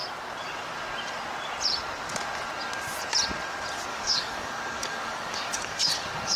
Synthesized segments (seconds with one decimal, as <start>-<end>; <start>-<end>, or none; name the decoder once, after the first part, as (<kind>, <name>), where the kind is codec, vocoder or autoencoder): 3.9-6.4 (codec, DAC)